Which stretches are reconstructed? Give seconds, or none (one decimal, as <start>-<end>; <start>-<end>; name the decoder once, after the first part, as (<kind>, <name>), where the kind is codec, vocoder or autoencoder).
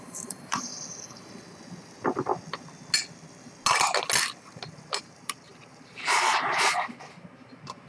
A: 0.0-0.7 (vocoder, BigVGAN v2); 5.0-7.9